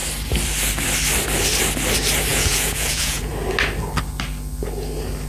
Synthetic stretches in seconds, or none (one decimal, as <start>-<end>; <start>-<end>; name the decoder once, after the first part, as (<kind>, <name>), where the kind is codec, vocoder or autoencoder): 2.3-3.3 (vocoder, Vocos)

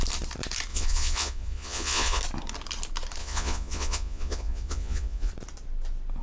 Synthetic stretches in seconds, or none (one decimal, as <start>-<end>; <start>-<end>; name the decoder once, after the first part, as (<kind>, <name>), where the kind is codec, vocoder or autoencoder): 0.7-2.2 (vocoder, Vocos); 3.2-5.3

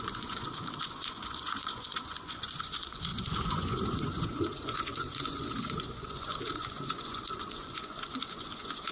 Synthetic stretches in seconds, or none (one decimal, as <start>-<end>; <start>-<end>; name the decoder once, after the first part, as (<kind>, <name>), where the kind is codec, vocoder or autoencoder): 0.0-8.9 (vocoder, Vocos)

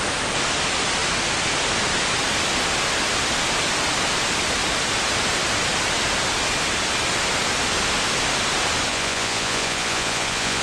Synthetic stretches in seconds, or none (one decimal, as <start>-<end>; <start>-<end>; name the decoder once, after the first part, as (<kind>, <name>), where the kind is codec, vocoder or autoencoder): 8.9-10.6 (vocoder, Vocos)

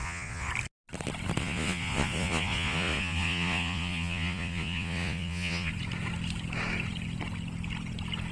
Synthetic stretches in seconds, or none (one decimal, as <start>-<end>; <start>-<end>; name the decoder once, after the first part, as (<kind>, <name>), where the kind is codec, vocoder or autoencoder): 0.0-0.5 (vocoder, Vocos); 1.4-5.7

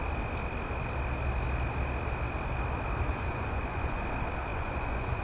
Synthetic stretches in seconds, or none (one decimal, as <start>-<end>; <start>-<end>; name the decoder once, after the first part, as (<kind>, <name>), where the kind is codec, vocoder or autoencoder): 3.1-4.0 (vocoder, Vocos); 4.5-5.2